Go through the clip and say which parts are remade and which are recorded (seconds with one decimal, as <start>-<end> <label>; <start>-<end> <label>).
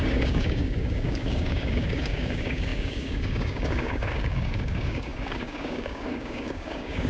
0.0-7.1 remade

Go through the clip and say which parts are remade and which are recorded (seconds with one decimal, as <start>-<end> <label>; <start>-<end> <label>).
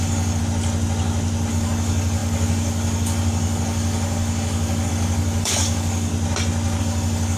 0.0-0.4 remade; 0.4-1.5 recorded; 1.5-6.1 remade; 6.1-6.8 recorded; 6.8-7.4 remade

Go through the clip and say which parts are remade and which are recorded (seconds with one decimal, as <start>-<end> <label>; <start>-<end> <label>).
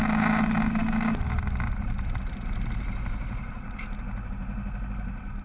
0.0-5.4 recorded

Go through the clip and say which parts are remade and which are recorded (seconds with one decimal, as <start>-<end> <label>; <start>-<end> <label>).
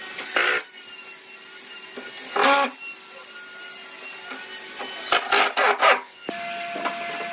0.0-5.8 recorded; 5.8-6.3 remade; 6.3-7.3 recorded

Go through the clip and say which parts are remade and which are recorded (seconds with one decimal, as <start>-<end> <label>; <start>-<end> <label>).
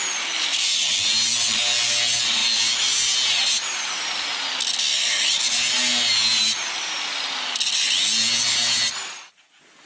0.0-9.9 recorded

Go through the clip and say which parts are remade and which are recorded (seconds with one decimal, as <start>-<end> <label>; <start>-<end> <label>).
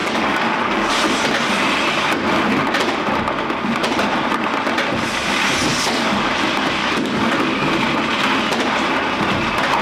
0.0-0.9 remade; 0.9-5.7 recorded; 5.7-6.3 remade; 6.3-6.8 recorded; 6.8-7.7 remade; 7.7-9.8 recorded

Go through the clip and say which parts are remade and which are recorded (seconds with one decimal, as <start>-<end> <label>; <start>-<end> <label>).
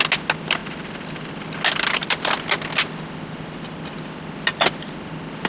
0.0-5.5 recorded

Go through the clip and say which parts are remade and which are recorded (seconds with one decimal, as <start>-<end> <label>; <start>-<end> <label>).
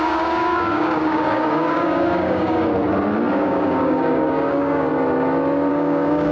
0.0-2.7 remade; 2.7-3.3 recorded; 3.3-4.9 remade; 4.9-5.7 recorded; 5.7-6.3 remade